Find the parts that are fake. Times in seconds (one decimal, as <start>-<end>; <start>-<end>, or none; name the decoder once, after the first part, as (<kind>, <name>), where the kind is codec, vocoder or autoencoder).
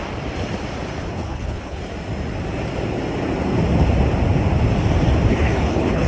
1.1-1.8 (codec, HILCodec); 5.3-6.1